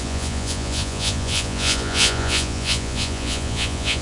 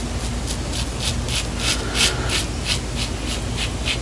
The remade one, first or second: first